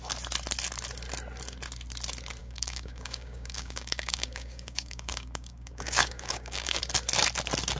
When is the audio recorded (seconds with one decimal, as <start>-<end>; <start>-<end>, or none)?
0.0-2.4; 6.8-7.8